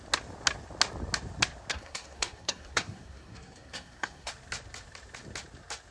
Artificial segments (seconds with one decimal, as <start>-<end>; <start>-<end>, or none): 1.7-4.3